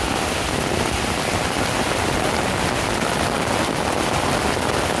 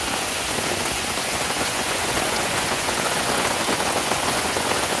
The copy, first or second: second